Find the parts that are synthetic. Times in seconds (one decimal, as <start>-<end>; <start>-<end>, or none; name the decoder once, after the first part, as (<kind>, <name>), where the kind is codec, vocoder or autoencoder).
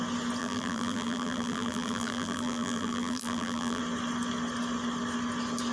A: 0.4-3.8 (vocoder, BigVGAN v2)